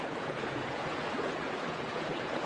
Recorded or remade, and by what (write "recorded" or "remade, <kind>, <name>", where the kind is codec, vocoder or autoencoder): remade, vocoder, Vocos